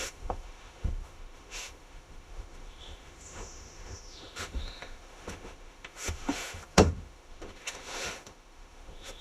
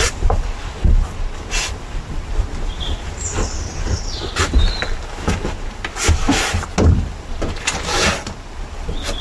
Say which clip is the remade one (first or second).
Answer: first